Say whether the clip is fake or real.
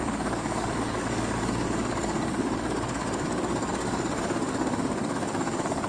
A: fake